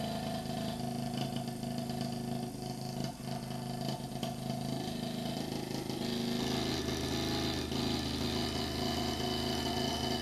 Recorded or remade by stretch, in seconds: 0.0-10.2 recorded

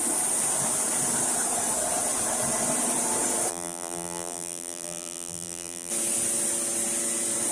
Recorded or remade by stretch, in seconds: 0.0-3.5 recorded; 3.5-5.9 remade; 5.9-7.5 recorded

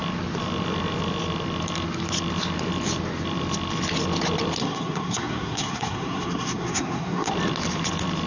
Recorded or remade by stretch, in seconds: 0.0-4.6 recorded; 4.6-7.3 remade; 7.3-8.3 recorded

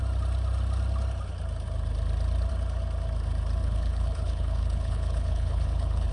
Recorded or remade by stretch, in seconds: 0.0-3.6 recorded; 3.6-6.1 remade

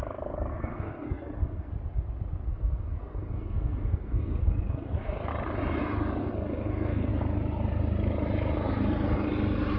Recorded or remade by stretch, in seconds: 0.0-0.5 recorded; 0.5-1.7 remade; 1.7-2.5 recorded; 2.5-5.3 remade; 5.3-6.2 recorded; 6.2-7.1 remade; 7.1-9.8 recorded

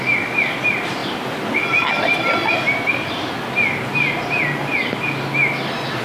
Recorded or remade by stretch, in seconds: 0.0-6.0 recorded

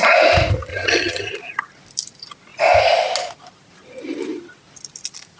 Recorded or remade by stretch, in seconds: 0.0-0.7 recorded; 0.7-1.3 remade; 1.3-5.4 recorded